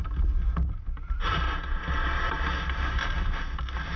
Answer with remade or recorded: recorded